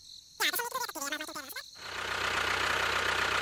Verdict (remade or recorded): recorded